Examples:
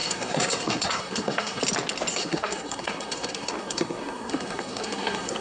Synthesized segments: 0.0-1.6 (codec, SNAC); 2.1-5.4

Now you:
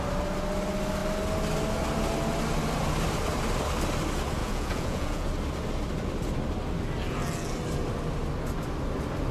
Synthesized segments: 4.4-5.3 (vocoder, Vocos)

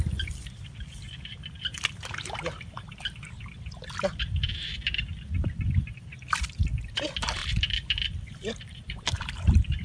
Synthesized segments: 0.0-9.8 (vocoder, BigVGAN v2)